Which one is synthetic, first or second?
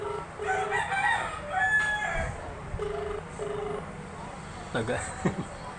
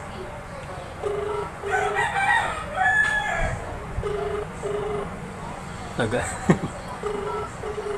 second